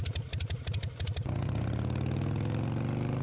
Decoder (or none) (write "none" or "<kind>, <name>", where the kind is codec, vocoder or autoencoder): none